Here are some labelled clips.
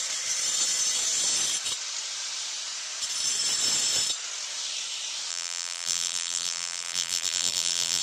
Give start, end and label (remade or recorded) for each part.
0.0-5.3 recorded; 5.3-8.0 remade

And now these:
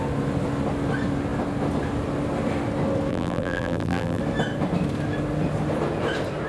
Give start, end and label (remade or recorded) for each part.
0.0-3.1 recorded; 3.1-4.2 remade; 4.2-6.5 recorded

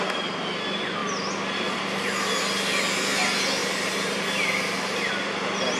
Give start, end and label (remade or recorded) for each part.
0.0-3.6 recorded; 3.6-5.1 remade; 5.1-5.8 recorded

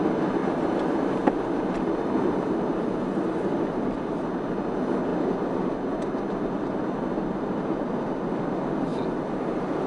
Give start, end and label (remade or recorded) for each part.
0.0-0.4 recorded; 0.4-4.3 remade; 4.3-9.9 recorded

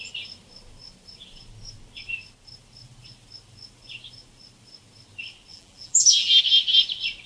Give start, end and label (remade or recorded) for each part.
0.0-5.5 recorded; 5.5-6.4 remade; 6.4-7.3 recorded

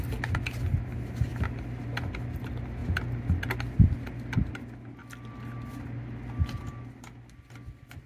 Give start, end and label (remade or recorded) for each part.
0.0-8.1 recorded

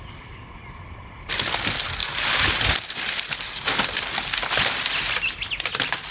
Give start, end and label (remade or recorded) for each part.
0.0-6.1 recorded